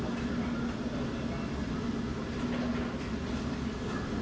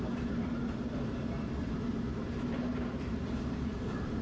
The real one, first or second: first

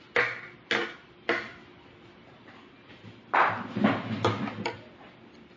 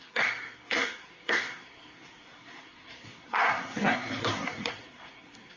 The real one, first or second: first